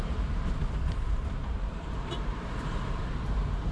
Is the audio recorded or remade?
remade